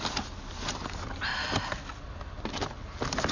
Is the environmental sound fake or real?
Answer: real